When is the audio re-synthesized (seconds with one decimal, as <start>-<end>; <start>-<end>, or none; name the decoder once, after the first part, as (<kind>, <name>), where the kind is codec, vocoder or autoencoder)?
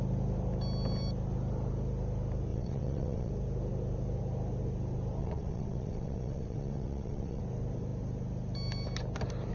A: 2.5-3.3 (vocoder, WaveNeXt); 5.2-7.4